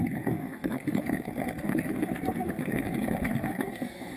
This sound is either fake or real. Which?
fake